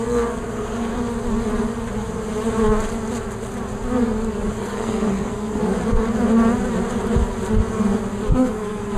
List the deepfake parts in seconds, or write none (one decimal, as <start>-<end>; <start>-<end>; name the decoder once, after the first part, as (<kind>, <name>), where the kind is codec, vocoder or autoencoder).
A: 0.0-0.9 (codec, SNAC); 4.5-5.6; 8.3-9.0

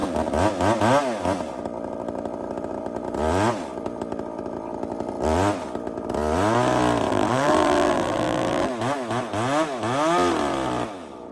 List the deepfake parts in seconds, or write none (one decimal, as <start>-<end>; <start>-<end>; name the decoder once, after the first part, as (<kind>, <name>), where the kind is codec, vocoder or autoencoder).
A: 7.1-8.7 (vocoder, BigVGAN v2)

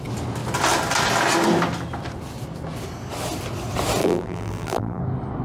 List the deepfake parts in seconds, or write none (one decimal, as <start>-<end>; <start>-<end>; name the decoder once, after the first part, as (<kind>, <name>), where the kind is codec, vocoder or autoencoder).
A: 4.0-5.0 (vocoder, BigVGAN v2)

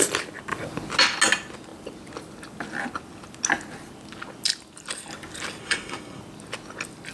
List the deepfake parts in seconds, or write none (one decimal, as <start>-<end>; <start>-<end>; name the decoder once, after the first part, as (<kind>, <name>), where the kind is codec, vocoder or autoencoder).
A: 5.6-6.2 (codec, SNAC)

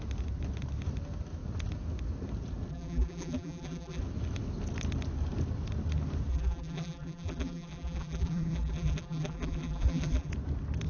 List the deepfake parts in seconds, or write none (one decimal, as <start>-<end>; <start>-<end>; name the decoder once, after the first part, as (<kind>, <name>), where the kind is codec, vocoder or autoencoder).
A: 2.7-4.0 (vocoder, BigVGAN v2); 6.3-10.3

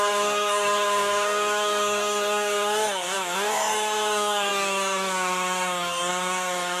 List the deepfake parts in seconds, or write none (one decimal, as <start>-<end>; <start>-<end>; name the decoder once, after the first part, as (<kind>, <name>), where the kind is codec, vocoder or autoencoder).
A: 0.0-6.8 (codec, DAC)

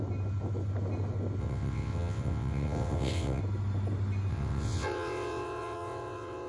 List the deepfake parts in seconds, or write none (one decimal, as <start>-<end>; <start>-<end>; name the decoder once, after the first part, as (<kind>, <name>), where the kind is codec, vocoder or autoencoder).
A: 1.4-3.4 (vocoder, WaveNeXt); 4.3-6.5

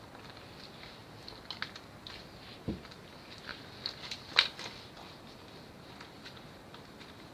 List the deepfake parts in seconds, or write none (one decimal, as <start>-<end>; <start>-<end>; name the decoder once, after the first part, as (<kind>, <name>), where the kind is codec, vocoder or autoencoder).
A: 3.5-6.8 (vocoder, BigVGAN v2)